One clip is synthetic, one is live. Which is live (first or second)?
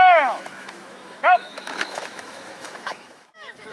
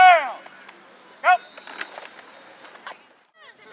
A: second